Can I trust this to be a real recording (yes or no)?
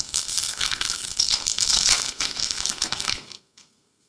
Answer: no